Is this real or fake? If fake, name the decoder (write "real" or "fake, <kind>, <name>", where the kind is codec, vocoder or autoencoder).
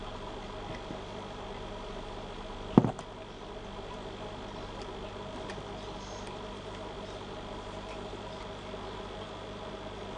real